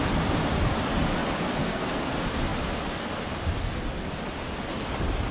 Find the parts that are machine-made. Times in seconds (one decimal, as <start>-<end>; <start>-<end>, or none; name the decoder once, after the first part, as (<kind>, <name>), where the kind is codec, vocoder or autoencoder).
1.6-2.1 (codec, SNAC)